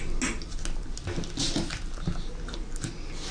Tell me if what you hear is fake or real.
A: real